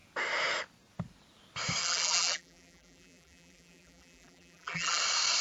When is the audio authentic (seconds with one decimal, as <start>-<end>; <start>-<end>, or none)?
0.0-1.8; 5.0-5.4